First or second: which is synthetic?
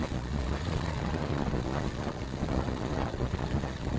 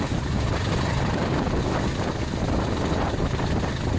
first